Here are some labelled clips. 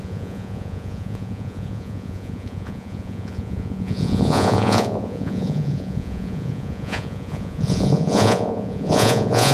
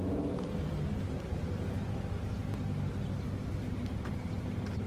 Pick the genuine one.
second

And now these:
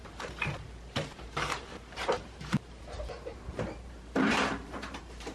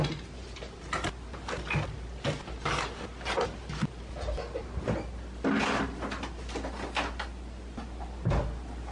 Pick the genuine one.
second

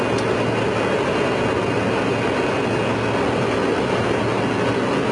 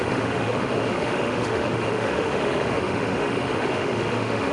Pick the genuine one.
first